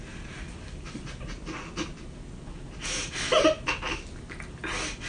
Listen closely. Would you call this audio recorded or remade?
recorded